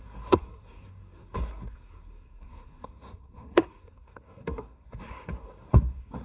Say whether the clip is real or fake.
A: fake